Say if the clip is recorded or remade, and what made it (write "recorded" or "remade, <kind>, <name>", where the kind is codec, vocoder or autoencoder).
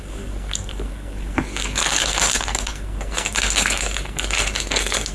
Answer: remade, codec, SNAC